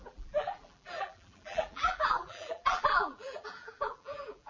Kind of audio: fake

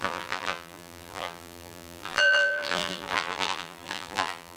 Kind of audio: fake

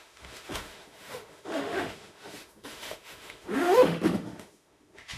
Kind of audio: fake